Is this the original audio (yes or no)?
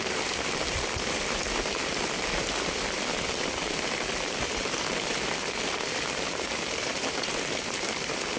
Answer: no